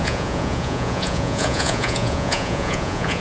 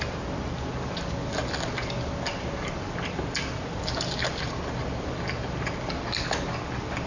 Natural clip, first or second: second